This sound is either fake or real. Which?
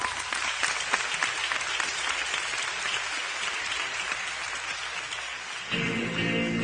real